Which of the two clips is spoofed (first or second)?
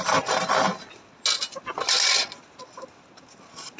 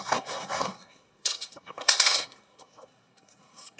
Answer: second